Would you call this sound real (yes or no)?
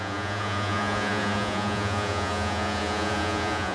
no